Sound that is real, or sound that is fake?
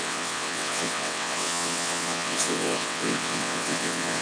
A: fake